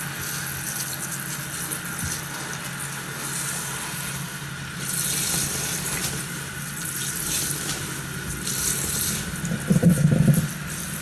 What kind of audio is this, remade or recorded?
recorded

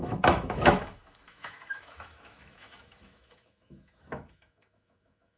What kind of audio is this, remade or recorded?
remade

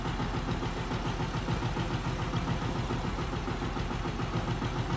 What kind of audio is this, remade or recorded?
recorded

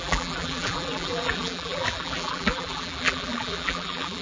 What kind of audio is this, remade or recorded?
remade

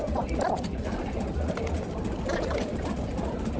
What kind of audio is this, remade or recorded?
recorded